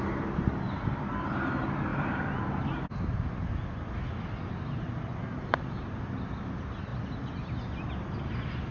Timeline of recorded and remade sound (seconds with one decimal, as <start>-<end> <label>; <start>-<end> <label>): 0.0-8.7 recorded